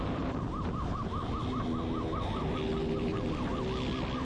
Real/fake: real